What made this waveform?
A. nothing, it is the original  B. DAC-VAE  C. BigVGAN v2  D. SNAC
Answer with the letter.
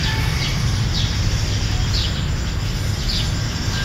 A